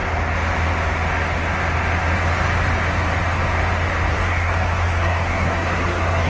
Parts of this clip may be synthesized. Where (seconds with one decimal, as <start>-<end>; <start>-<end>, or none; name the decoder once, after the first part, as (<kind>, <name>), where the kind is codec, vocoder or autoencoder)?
4.1-6.3 (codec, SNAC)